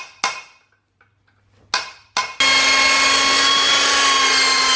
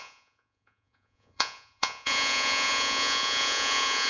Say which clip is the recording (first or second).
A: first